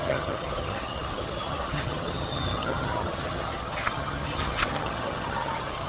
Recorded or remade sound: remade